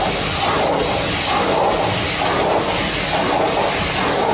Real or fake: real